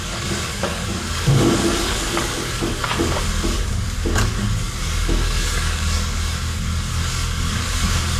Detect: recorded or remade remade